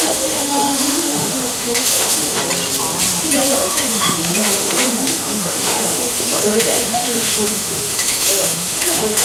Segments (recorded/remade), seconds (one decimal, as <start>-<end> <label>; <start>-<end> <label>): 0.0-2.4 remade; 2.4-3.5 recorded; 3.5-9.2 remade

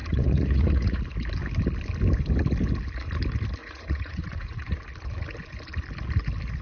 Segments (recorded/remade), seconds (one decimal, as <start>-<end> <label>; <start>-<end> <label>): 0.0-1.0 remade; 1.0-3.6 recorded; 3.6-4.8 remade; 4.8-6.6 recorded

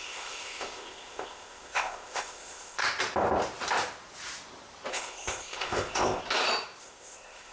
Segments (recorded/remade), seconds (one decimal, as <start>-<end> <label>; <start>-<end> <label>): 0.0-2.8 remade; 2.8-4.9 recorded; 4.9-6.2 remade; 6.2-6.8 recorded; 6.8-7.5 remade

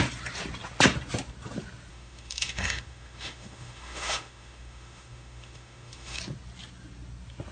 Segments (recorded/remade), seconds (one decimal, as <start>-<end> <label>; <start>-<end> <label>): 0.0-1.9 recorded; 1.9-6.2 remade; 6.2-7.5 recorded

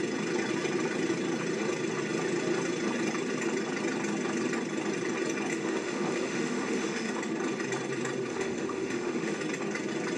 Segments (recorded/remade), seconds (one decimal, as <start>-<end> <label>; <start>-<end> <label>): 0.0-5.5 recorded; 5.5-7.1 remade; 7.1-8.3 recorded; 8.3-9.4 remade; 9.4-10.2 recorded

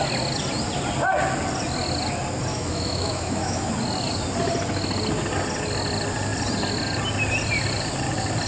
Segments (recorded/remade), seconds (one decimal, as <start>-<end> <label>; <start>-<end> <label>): 0.0-2.5 recorded; 2.5-3.7 remade; 3.7-8.5 recorded

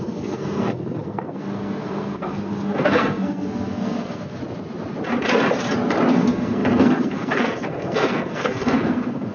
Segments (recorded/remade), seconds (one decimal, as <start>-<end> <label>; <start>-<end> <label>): 0.0-4.4 remade; 4.4-6.1 recorded; 6.1-9.3 remade